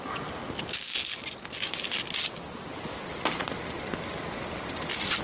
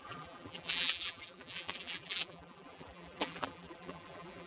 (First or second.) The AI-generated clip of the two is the second